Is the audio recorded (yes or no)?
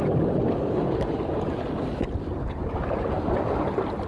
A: yes